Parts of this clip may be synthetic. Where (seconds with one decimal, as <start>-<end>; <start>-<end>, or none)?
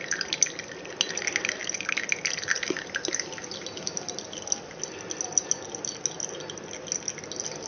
none